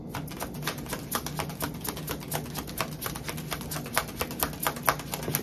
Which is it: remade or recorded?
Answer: recorded